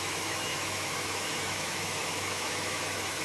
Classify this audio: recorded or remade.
remade